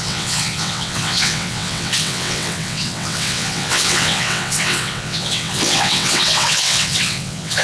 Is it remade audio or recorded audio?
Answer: remade